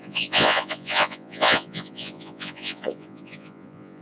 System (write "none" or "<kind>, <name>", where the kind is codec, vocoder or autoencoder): vocoder, Vocos